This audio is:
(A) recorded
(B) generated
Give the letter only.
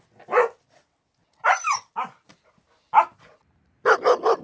A